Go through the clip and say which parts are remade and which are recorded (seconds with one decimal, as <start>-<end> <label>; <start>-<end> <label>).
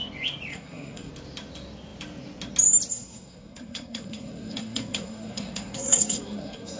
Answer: 0.0-0.5 recorded; 0.5-1.1 remade; 1.1-2.9 recorded; 2.9-6.8 remade